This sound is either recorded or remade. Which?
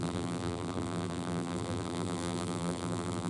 remade